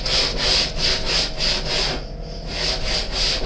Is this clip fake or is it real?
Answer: real